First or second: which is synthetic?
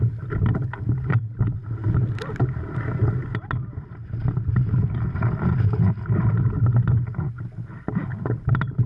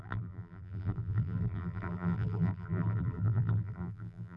second